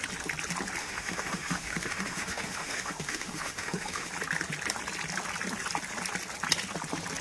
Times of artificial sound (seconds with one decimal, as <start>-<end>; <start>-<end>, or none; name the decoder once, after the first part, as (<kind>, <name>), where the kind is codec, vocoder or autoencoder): 0.8-4.1 (autoencoder, DAC-VAE)